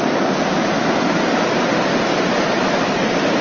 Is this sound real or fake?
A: real